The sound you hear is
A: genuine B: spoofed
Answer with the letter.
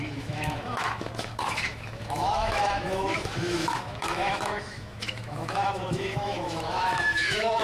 B